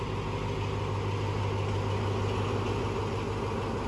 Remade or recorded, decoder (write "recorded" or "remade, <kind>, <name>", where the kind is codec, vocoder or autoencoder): recorded